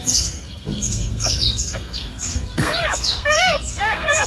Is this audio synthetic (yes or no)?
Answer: yes